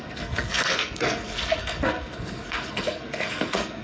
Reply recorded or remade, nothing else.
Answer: remade